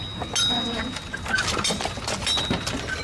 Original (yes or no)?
yes